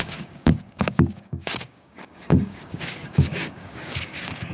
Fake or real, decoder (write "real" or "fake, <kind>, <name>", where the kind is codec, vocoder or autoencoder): fake, codec, DAC